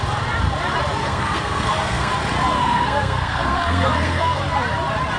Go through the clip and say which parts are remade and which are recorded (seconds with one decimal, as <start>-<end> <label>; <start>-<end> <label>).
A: 0.0-1.0 recorded; 1.0-2.1 remade; 2.1-2.6 recorded; 2.6-4.4 remade; 4.4-5.2 recorded